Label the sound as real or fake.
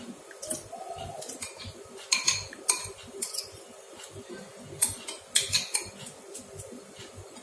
real